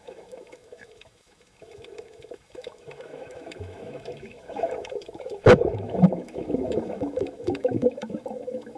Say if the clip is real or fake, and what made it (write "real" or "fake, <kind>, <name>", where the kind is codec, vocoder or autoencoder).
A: fake, autoencoder, DAC-VAE